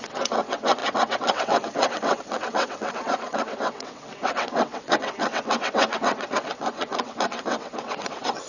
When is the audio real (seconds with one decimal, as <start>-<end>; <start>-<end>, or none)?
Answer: none